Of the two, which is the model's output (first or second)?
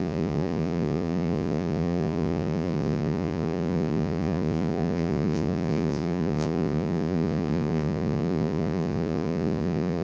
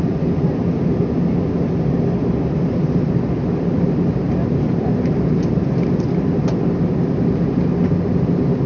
first